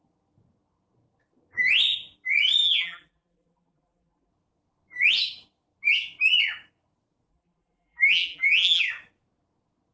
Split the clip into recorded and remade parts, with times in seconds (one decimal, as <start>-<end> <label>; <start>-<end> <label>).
0.0-2.6 recorded; 2.6-4.3 remade; 4.3-7.3 recorded; 7.3-8.8 remade; 8.8-9.9 recorded